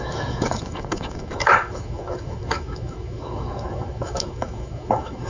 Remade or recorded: remade